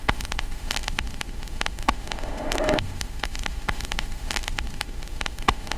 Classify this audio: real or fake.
fake